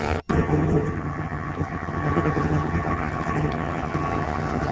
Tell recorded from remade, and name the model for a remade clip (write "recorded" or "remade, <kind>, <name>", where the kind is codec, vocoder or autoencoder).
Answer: remade, vocoder, HiFi-GAN